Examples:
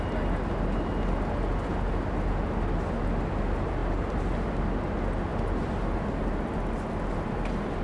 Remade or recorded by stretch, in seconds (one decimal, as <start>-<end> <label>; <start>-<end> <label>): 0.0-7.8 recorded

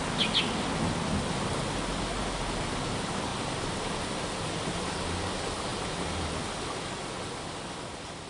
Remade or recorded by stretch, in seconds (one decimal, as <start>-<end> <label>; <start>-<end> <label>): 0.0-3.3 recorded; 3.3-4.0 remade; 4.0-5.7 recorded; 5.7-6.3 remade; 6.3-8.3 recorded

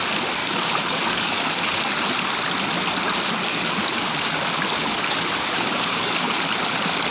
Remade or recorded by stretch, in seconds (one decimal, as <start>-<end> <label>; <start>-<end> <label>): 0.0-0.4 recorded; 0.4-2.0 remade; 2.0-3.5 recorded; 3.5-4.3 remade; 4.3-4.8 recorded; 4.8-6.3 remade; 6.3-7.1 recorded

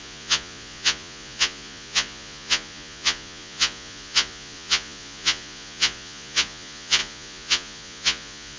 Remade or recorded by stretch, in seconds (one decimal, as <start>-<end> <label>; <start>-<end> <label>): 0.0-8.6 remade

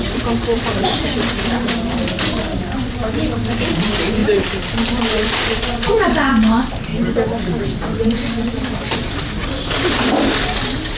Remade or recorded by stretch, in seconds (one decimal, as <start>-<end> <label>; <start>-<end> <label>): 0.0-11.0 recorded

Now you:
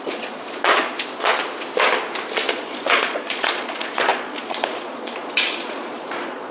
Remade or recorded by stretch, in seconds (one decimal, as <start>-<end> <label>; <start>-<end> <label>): 0.0-1.3 remade; 1.3-2.5 recorded; 2.5-6.5 remade

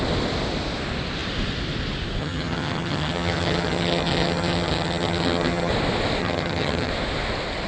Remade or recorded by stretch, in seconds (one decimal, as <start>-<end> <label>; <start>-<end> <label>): 0.0-2.2 recorded; 2.2-5.7 remade; 5.7-6.2 recorded; 6.2-6.9 remade; 6.9-7.7 recorded